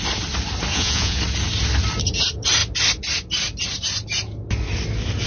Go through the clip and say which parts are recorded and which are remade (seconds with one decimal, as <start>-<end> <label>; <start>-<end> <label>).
0.0-0.7 recorded; 0.7-1.2 remade; 1.2-5.3 recorded